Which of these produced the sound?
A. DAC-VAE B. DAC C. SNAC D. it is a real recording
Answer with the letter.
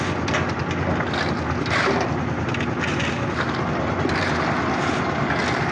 D